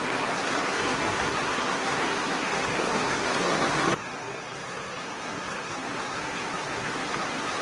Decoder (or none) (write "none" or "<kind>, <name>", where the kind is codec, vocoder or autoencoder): codec, SNAC